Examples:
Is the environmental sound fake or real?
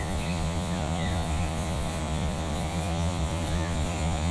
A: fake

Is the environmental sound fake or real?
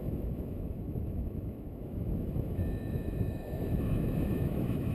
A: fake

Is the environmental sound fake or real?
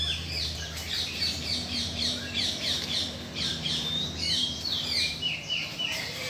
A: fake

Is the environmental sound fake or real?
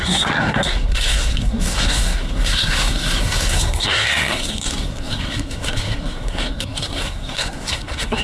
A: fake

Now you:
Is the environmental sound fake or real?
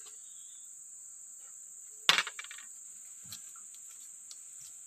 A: real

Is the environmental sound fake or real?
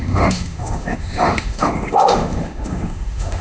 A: fake